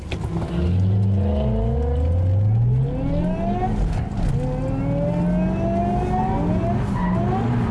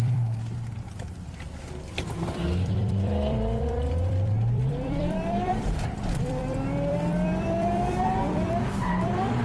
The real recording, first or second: first